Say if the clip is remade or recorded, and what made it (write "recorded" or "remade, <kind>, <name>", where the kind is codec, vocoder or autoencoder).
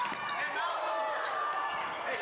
recorded